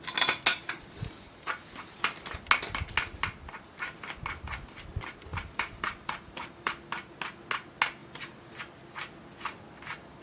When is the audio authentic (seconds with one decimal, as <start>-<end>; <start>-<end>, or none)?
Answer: 0.0-0.5; 2.0-5.3; 6.7-8.0; 8.6-10.2

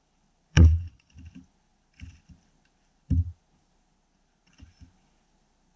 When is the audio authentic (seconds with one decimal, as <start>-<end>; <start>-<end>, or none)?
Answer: 0.0-0.5; 1.1-5.8

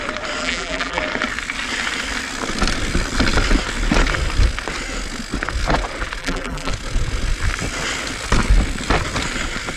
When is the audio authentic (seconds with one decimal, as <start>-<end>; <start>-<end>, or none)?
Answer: 0.0-0.4; 1.0-6.2; 6.7-9.8